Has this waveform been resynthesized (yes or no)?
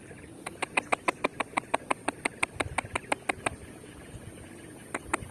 no